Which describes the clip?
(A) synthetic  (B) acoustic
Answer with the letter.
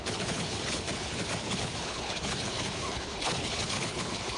A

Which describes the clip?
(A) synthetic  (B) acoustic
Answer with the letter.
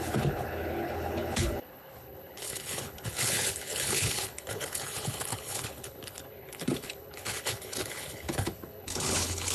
A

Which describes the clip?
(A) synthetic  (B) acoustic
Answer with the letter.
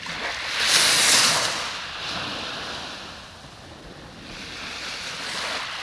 B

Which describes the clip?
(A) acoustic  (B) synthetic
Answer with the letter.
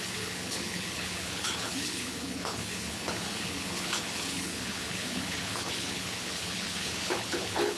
B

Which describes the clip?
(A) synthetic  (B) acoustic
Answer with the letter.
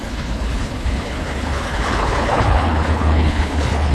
A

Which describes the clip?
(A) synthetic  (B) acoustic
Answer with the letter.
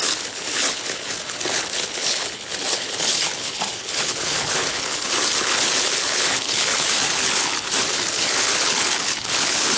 A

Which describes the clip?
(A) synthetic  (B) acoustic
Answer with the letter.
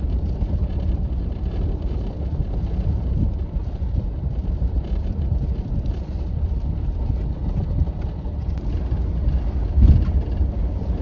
B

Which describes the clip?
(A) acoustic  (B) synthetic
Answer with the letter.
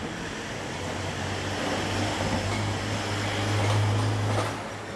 A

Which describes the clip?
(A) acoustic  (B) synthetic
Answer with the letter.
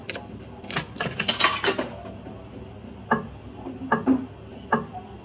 A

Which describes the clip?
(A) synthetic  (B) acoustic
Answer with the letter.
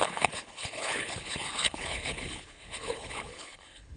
A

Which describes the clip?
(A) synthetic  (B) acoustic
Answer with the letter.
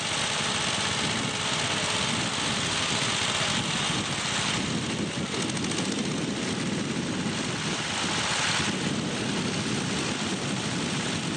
B